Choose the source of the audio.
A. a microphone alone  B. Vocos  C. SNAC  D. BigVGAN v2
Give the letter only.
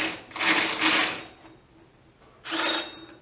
A